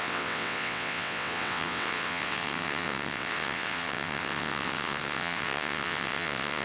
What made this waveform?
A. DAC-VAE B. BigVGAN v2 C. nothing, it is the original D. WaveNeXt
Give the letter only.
D